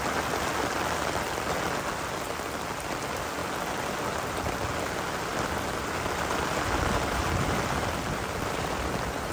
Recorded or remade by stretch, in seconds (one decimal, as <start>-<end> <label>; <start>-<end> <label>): 0.0-5.3 recorded; 5.3-9.3 remade